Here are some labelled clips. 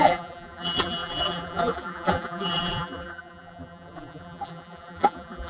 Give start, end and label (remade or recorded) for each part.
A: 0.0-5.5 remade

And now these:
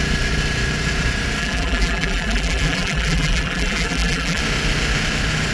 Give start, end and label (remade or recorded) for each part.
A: 0.0-1.4 recorded; 1.4-4.4 remade; 4.4-5.5 recorded

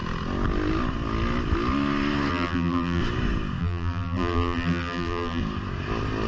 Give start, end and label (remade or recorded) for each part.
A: 0.0-2.3 recorded; 2.3-3.0 remade; 3.0-3.6 recorded; 3.6-5.4 remade; 5.4-6.3 recorded

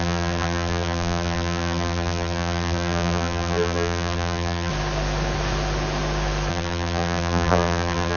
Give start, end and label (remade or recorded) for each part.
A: 0.0-4.7 remade; 4.7-6.5 recorded; 6.5-8.2 remade

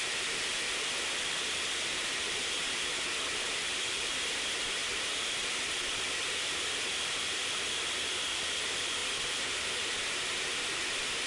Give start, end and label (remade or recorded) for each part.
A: 0.0-11.3 remade

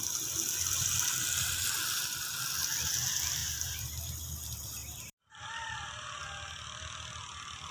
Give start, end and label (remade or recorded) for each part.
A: 0.0-3.4 recorded; 3.4-4.0 remade; 4.0-4.8 recorded; 4.8-6.2 remade; 6.2-7.7 recorded

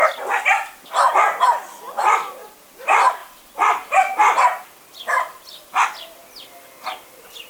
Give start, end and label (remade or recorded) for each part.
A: 0.0-3.2 recorded; 3.2-6.2 remade; 6.2-7.5 recorded

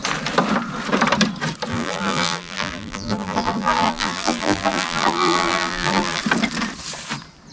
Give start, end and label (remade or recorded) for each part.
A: 0.0-1.7 recorded; 1.7-6.2 remade; 6.2-7.5 recorded